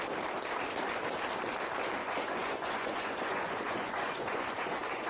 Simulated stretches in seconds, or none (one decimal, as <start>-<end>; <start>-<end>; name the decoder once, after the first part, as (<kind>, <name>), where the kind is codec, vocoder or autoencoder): 2.0-5.1 (vocoder, Vocos)